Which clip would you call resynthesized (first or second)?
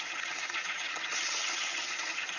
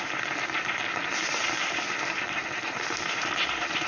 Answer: first